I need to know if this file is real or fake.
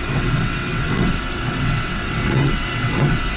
fake